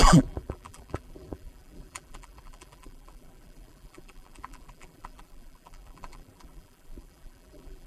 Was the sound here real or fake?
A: fake